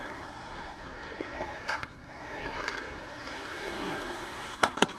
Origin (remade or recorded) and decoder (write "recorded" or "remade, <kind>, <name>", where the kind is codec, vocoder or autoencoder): remade, codec, SNAC